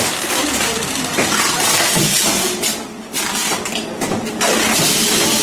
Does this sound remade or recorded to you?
recorded